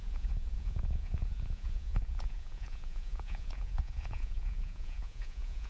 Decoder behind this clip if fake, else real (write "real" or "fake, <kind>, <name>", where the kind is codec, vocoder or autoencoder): fake, vocoder, Vocos